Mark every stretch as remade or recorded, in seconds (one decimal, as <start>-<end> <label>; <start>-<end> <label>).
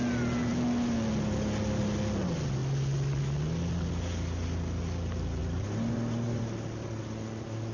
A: 0.0-5.4 recorded; 5.4-7.0 remade; 7.0-7.7 recorded